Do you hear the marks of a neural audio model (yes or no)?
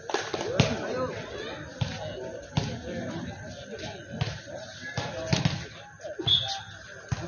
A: no